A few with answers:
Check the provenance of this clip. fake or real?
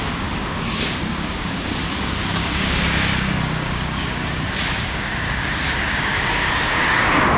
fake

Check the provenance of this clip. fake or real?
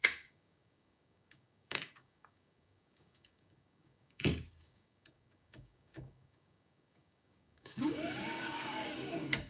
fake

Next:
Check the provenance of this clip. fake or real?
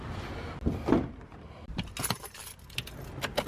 real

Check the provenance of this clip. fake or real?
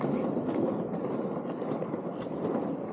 real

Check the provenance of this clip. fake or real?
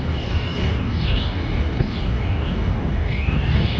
fake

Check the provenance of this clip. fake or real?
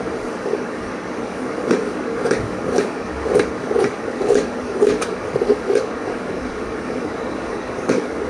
fake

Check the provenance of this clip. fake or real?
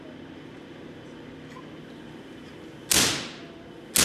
real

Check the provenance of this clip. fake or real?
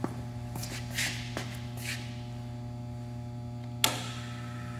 real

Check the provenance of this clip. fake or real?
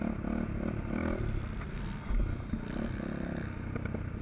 real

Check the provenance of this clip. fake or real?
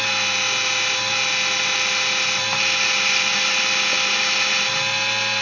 real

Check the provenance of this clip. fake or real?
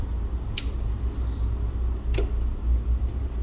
real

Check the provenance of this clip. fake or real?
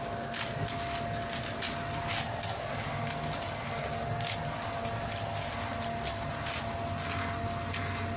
real